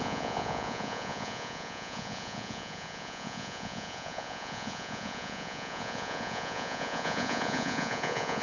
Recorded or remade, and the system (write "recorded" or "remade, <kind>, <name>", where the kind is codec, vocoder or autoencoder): remade, vocoder, Vocos